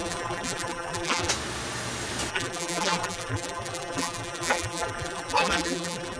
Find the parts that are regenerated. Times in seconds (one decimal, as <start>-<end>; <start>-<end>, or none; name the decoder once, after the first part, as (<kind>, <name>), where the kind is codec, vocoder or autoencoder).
0.0-1.3 (vocoder, BigVGAN v2); 2.3-6.2